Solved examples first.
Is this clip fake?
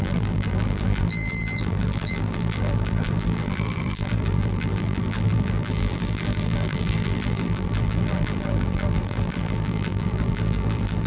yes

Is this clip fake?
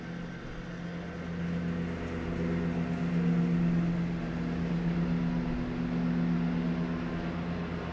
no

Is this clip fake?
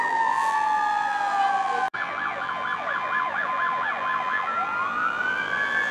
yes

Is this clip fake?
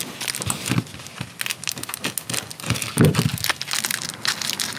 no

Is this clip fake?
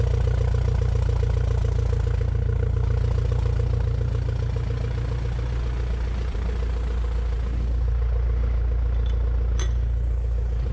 no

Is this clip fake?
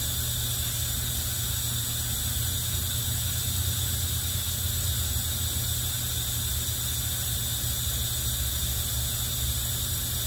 no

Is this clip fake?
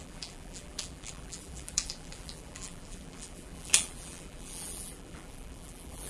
yes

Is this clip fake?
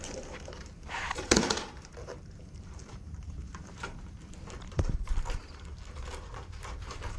yes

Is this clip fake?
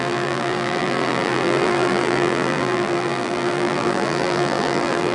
yes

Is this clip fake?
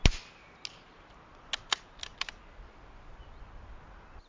no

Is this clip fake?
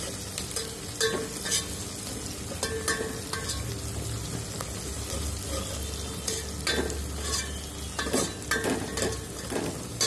no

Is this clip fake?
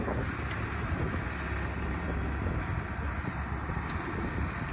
no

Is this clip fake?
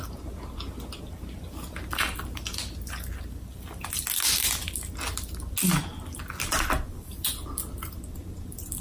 no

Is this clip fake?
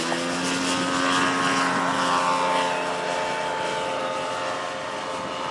no